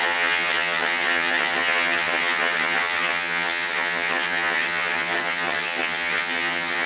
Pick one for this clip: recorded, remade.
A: remade